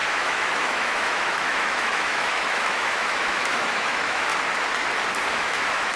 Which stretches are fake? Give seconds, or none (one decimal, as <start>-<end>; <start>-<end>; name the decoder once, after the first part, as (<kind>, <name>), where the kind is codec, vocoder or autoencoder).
0.0-4.3 (autoencoder, DAC-VAE); 5.3-6.0